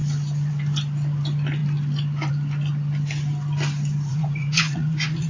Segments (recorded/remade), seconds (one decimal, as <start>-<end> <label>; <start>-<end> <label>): 0.0-4.1 recorded; 4.1-5.3 remade